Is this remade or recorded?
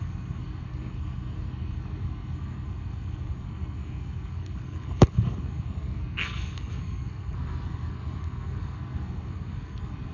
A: remade